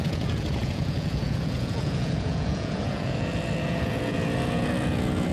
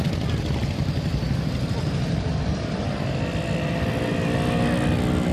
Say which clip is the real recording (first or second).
second